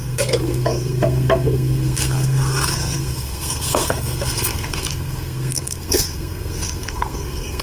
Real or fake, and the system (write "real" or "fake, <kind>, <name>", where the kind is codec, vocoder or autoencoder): fake, codec, SNAC